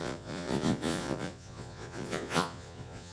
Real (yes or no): no